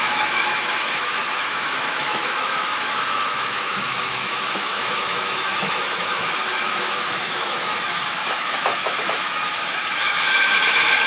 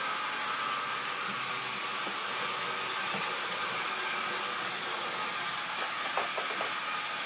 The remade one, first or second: first